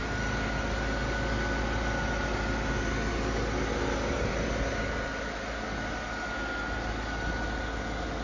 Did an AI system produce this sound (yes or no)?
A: no